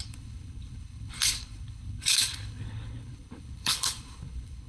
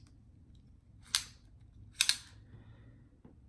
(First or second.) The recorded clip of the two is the second